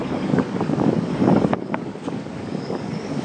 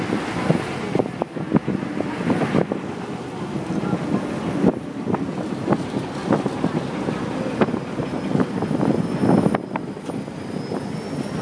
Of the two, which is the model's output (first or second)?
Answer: first